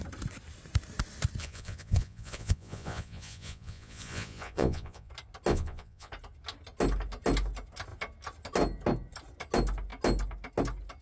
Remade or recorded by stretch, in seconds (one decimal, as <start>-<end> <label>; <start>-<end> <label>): 0.0-1.4 recorded; 1.4-5.1 remade; 5.1-5.5 recorded; 5.5-6.1 remade; 6.1-11.0 recorded